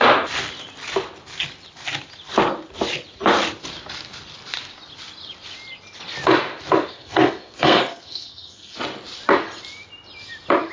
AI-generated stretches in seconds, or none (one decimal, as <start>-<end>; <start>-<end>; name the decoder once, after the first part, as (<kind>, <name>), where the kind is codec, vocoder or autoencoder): 6.9-8.8 (codec, SNAC)

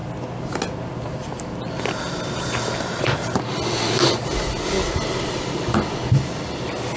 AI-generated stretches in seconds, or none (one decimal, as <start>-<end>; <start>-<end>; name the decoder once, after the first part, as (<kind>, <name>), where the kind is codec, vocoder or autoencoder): none